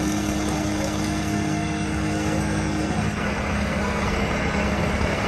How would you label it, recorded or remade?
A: remade